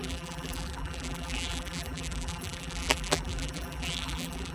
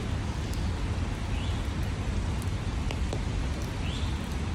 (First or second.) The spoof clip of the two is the first